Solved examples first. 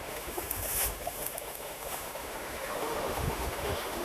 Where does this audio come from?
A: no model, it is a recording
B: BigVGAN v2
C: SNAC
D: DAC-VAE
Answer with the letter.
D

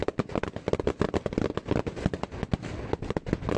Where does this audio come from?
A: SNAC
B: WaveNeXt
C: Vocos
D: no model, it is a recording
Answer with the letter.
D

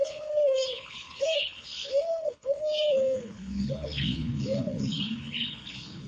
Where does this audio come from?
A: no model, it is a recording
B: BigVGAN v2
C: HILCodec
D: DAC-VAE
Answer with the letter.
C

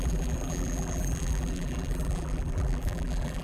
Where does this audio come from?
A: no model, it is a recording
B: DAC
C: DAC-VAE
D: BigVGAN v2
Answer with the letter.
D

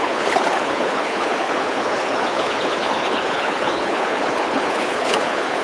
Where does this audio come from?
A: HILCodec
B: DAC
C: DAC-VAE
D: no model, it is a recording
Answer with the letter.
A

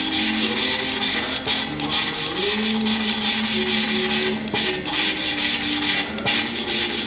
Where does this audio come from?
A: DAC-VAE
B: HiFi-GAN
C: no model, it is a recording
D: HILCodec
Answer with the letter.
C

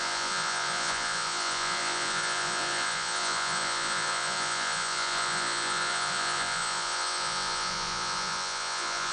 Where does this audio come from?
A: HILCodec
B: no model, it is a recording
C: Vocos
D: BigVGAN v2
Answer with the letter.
C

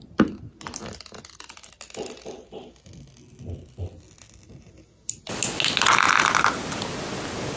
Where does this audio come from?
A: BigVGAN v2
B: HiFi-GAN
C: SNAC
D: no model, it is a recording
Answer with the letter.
D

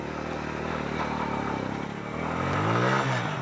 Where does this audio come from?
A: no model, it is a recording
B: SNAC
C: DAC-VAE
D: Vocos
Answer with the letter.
A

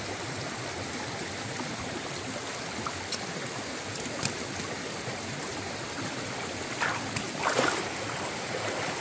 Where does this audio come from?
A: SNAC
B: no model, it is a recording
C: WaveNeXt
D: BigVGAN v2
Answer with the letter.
B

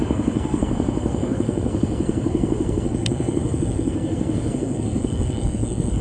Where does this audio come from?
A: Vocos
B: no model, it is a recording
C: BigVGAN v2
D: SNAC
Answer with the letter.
D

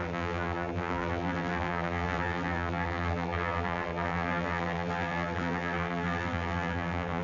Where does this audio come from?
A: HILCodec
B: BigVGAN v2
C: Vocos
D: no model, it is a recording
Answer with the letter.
B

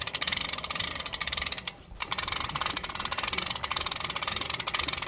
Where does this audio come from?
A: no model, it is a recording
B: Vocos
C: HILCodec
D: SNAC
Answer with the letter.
A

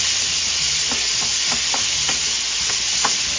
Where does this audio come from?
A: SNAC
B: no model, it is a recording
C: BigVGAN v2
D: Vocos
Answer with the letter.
B